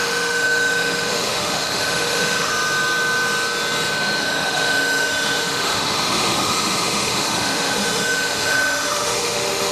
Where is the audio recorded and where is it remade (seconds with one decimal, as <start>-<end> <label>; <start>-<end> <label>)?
0.0-2.5 remade; 2.5-4.2 recorded; 4.2-9.7 remade